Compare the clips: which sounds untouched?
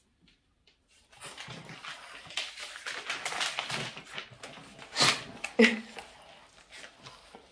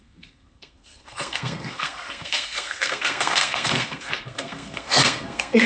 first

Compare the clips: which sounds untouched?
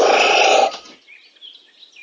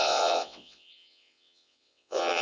first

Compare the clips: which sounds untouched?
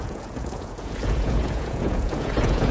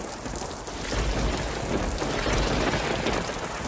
second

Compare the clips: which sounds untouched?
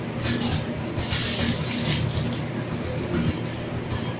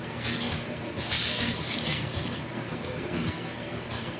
first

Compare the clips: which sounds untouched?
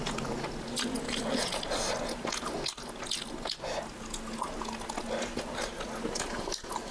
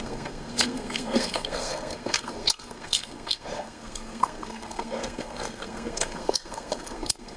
first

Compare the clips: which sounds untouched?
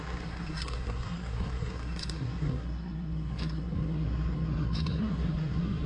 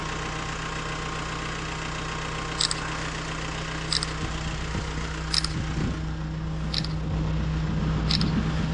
second